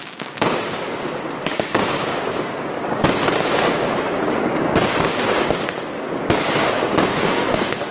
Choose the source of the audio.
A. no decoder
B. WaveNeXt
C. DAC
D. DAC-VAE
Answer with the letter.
C